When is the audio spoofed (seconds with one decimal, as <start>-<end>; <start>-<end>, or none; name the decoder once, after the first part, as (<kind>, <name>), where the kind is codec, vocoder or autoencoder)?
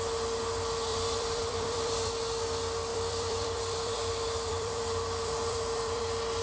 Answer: 0.9-2.1 (vocoder, BigVGAN v2); 2.9-6.0